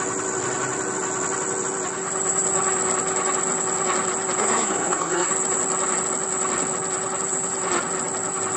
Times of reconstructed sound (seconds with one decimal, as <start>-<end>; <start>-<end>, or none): 4.4-5.3